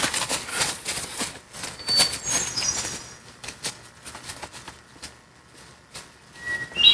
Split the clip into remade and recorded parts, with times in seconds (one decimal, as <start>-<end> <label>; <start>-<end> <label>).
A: 0.0-0.5 recorded; 0.5-1.2 remade; 1.2-6.9 recorded